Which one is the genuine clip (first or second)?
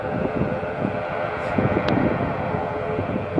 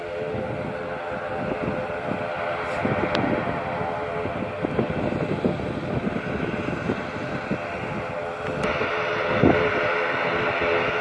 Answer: second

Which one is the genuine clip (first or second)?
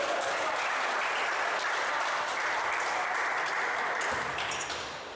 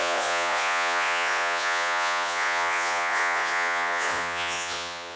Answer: first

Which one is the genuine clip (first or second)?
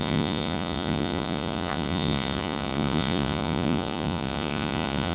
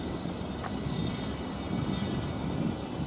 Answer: second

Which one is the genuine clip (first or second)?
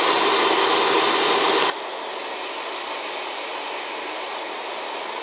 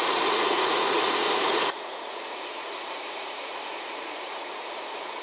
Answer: first